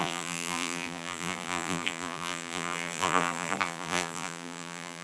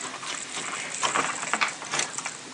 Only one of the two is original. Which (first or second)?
second